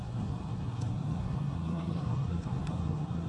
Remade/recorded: remade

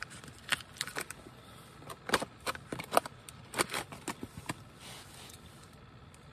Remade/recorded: recorded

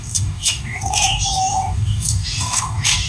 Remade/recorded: remade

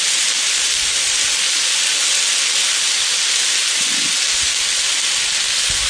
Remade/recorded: recorded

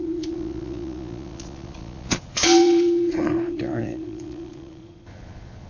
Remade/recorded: remade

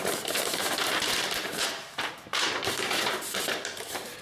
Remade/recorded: remade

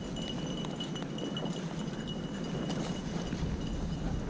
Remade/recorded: recorded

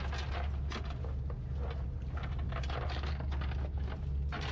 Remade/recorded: recorded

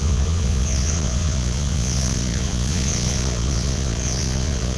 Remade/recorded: remade